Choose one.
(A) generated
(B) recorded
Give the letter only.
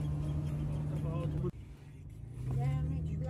B